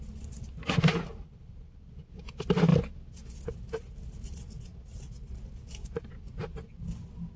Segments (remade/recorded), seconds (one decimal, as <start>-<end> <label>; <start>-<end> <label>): 0.0-7.4 recorded